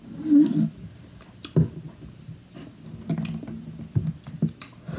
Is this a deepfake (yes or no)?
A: no